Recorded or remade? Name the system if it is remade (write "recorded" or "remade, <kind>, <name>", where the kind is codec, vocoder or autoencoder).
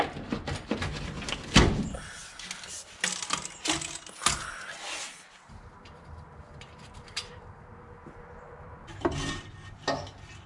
recorded